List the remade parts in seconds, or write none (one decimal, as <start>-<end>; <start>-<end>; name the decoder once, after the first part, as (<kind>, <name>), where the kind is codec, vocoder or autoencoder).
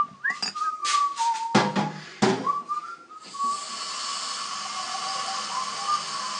none